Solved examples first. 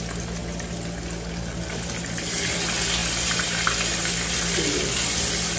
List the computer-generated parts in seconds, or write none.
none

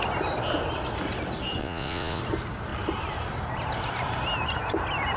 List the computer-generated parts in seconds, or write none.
1.6-2.2 (vocoder, Vocos)

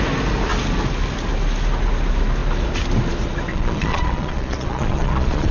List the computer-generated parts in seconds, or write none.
3.5-5.5 (vocoder, Vocos)

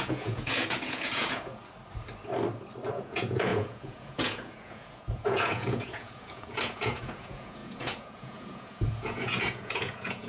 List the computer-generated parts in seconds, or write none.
0.0-1.6 (vocoder, Vocos); 2.9-10.3

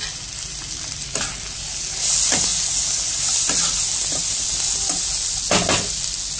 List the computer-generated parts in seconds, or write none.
none

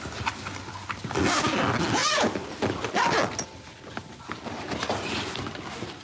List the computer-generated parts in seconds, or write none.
none